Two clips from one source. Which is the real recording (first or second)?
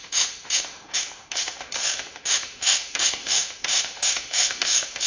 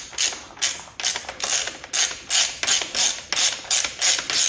second